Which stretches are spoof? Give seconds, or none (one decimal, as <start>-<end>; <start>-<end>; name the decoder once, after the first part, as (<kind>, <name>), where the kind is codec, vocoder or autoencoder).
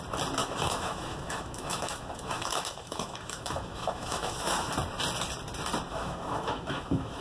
0.4-4.7 (autoencoder, DAC-VAE); 5.9-7.2